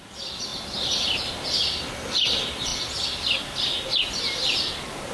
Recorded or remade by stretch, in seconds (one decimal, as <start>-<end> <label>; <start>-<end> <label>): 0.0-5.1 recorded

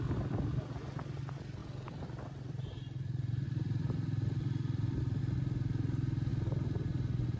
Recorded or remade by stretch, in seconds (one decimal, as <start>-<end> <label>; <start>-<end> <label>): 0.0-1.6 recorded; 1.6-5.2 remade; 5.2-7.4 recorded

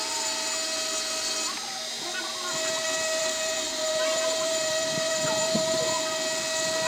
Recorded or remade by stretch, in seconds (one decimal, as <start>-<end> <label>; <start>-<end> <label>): 0.0-3.2 recorded; 3.2-5.8 remade; 5.8-6.9 recorded

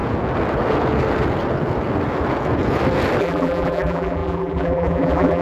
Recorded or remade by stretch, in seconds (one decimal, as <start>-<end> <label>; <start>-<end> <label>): 0.0-3.2 recorded; 3.2-5.4 remade

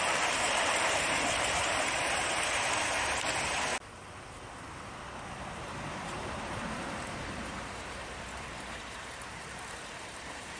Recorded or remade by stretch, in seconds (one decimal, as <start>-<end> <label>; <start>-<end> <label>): 0.0-3.7 remade; 3.7-5.3 recorded; 5.3-10.6 remade

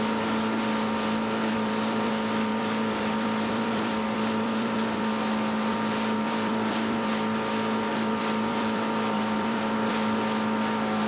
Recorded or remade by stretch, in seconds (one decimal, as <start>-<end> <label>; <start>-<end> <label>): 0.0-1.4 recorded; 1.4-2.1 remade; 2.1-2.5 recorded; 2.5-5.2 remade; 5.2-5.7 recorded; 5.7-7.1 remade; 7.1-7.9 recorded; 7.9-9.9 remade; 9.9-11.1 recorded

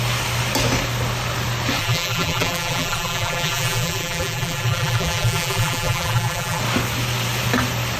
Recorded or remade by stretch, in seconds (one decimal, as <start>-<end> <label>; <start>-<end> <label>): 0.0-1.8 recorded; 1.8-6.6 remade; 6.6-8.0 recorded

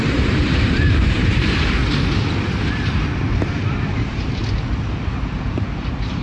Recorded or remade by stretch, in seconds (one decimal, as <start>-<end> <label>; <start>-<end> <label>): 0.0-1.8 remade; 1.8-3.2 recorded; 3.2-4.4 remade; 4.4-5.0 recorded; 5.0-6.2 remade